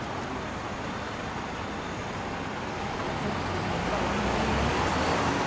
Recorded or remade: remade